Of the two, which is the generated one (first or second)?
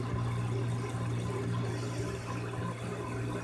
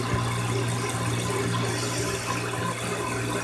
first